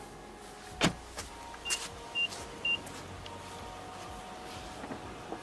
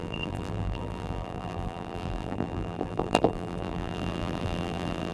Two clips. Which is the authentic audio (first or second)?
first